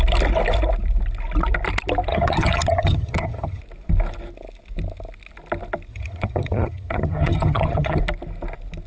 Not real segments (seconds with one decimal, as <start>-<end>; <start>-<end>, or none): 2.1-3.6; 5.9-8.0